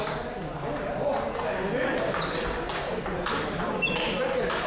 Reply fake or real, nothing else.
real